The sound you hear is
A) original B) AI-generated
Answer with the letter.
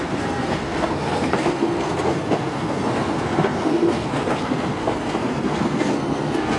B